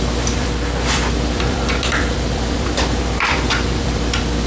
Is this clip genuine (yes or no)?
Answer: no